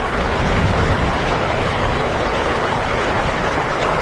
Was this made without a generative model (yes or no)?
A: no